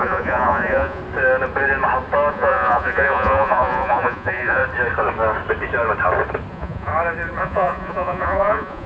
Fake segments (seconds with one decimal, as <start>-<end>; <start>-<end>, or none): 0.0-1.0; 2.3-4.6; 6.5-6.9; 7.4-8.9